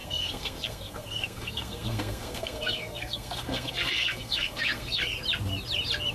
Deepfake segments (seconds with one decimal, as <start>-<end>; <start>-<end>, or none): 0.0-5.0